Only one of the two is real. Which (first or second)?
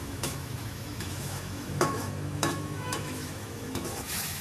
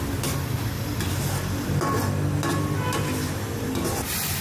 second